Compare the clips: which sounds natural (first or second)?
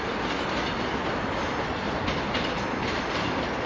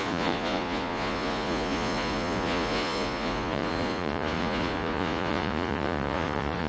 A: first